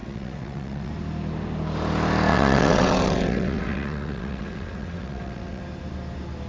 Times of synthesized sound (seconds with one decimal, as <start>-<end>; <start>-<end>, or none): 0.0-0.9; 2.3-5.6